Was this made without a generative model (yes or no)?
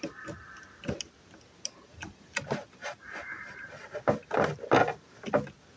yes